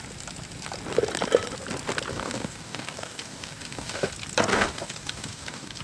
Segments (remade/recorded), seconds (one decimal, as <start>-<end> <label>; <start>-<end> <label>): 0.0-2.1 recorded; 2.1-4.1 remade; 4.1-4.5 recorded; 4.5-5.8 remade